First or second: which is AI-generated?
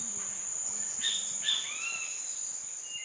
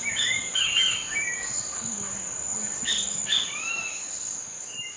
second